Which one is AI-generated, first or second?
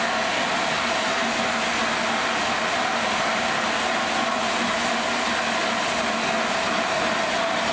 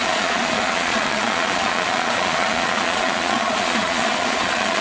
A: second